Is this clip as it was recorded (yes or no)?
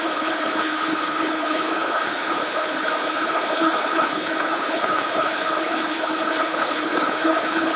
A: no